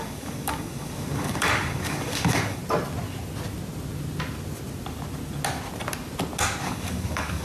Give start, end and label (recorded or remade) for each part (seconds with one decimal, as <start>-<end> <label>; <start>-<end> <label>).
0.0-2.6 remade; 2.6-6.6 recorded; 6.6-7.4 remade

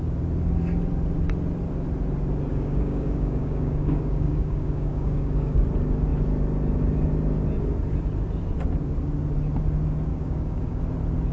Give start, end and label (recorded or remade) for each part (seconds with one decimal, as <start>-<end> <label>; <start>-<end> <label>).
0.0-2.5 recorded; 2.5-5.6 remade; 5.6-10.1 recorded; 10.1-10.8 remade; 10.8-11.3 recorded